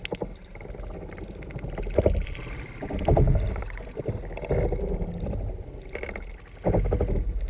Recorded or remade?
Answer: recorded